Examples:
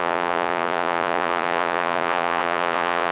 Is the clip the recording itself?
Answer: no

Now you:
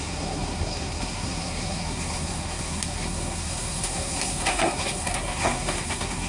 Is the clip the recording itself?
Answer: no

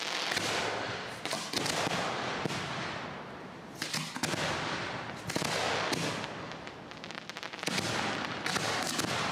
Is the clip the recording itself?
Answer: yes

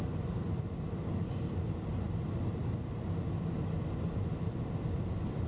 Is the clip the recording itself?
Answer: yes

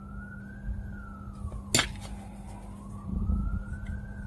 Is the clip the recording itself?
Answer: yes